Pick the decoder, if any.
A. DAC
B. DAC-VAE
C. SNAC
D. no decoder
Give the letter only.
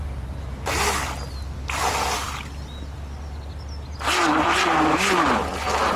D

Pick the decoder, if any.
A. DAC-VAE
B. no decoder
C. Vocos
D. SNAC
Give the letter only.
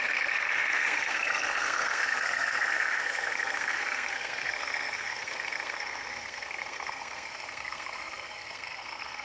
D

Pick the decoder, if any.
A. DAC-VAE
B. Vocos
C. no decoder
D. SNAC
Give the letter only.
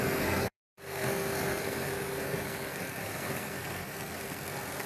D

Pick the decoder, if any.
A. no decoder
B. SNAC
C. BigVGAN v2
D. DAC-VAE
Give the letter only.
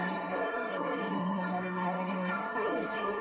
B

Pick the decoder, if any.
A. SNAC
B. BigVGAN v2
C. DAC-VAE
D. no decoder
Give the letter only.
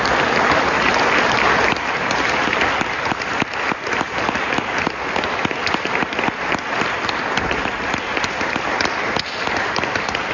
D